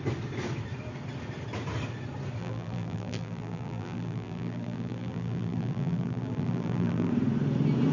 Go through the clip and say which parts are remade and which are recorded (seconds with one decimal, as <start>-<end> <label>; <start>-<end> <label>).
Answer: 0.0-2.4 recorded; 2.4-7.1 remade; 7.1-7.9 recorded